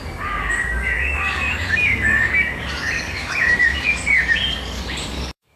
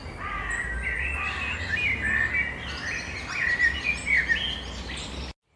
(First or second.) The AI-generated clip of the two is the first